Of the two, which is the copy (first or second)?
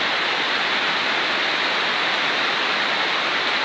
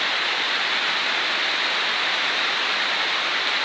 second